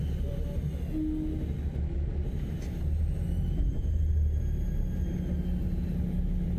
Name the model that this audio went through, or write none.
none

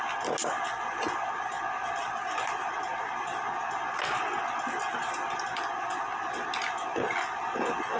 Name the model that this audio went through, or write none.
none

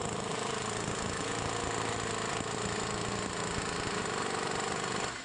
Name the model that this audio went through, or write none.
none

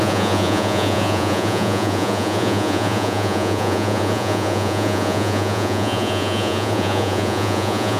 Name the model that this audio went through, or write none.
vocoder, Vocos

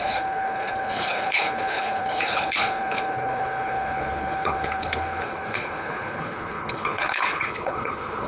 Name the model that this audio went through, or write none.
codec, HILCodec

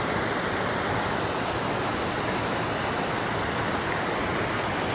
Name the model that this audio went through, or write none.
none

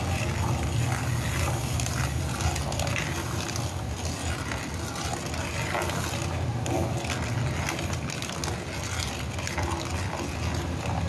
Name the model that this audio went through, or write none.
none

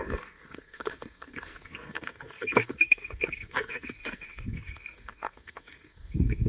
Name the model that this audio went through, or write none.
codec, SNAC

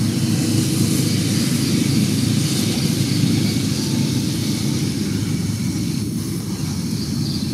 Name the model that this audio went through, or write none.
none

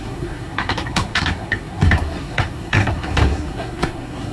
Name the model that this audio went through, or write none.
codec, SNAC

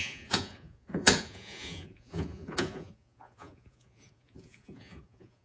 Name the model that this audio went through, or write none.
vocoder, Vocos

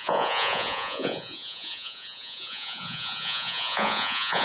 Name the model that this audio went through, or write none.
vocoder, Vocos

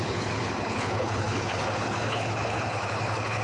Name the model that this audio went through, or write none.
codec, HILCodec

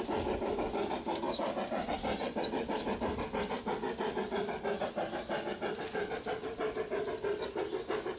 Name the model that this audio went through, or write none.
none